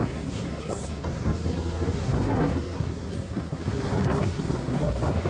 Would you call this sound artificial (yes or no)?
yes